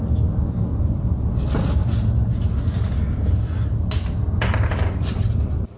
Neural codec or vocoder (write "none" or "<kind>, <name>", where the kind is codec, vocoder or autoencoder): none